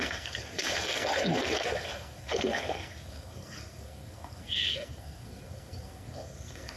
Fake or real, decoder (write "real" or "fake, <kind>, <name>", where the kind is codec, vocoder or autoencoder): fake, codec, SNAC